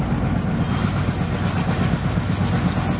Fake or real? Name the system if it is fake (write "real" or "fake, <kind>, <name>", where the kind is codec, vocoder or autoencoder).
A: real